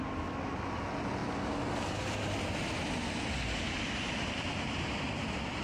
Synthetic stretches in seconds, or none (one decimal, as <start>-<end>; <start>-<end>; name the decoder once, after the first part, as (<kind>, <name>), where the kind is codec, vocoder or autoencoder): none